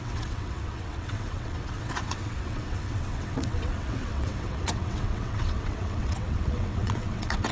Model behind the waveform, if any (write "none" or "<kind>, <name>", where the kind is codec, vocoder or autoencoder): vocoder, WaveNeXt